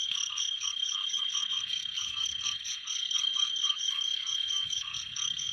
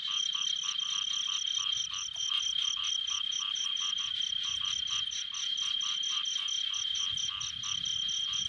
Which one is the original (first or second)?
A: second